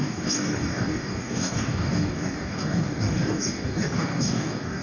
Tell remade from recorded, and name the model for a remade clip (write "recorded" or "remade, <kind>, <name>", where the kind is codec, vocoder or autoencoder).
remade, codec, DAC